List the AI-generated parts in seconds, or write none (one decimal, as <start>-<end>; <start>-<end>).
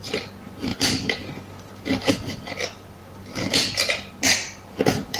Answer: none